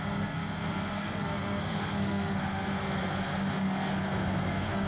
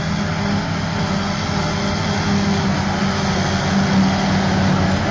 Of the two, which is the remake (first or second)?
first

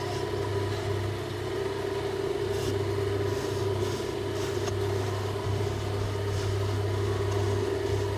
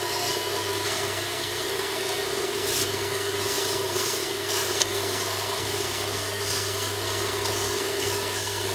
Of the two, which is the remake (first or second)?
second